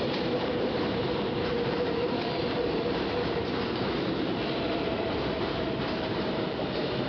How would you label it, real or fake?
fake